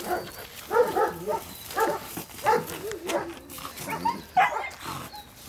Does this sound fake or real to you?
real